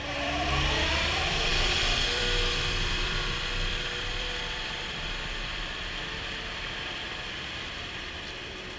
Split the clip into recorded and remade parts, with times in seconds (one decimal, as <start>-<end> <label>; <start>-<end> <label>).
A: 0.0-8.8 remade